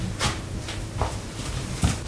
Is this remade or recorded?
recorded